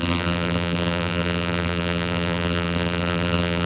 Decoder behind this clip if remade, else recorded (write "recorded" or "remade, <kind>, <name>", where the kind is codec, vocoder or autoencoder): remade, vocoder, BigVGAN v2